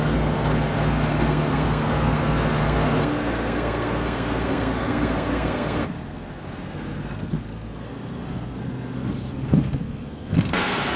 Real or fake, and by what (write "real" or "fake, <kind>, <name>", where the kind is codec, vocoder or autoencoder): fake, codec, SNAC